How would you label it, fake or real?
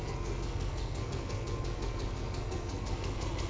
fake